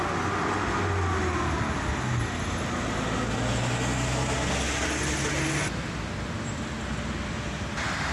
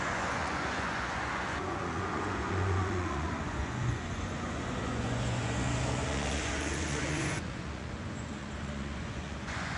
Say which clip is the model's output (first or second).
second